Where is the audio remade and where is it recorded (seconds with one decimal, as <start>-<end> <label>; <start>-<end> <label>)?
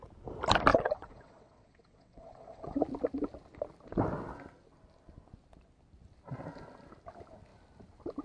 0.0-0.7 recorded; 0.7-2.8 remade; 2.8-8.2 recorded